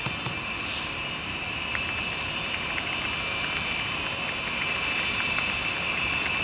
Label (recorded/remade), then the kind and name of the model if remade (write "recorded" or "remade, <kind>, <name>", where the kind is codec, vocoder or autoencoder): recorded